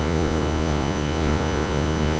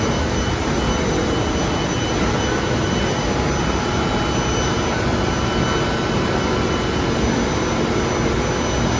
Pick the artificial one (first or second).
first